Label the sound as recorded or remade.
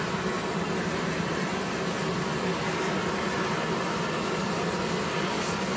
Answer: recorded